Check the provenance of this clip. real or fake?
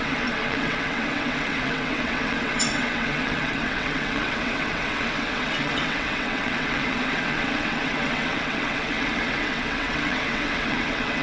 fake